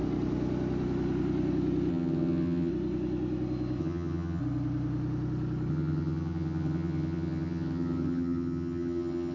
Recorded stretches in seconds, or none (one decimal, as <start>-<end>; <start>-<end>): 0.0-1.9; 2.7-3.8; 4.4-5.7